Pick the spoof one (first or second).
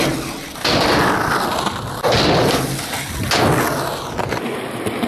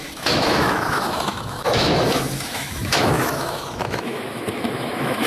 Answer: second